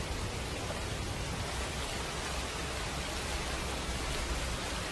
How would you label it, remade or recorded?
recorded